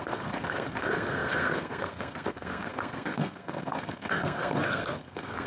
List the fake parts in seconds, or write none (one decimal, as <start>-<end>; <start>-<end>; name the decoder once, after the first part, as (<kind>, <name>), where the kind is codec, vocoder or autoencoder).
0.0-5.5 (codec, SNAC)